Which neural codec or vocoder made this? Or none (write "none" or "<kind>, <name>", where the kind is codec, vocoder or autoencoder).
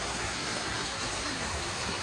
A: codec, SNAC